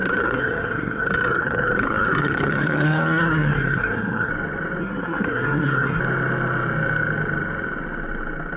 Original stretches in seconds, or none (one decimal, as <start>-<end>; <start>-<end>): 4.3-4.8; 6.0-8.6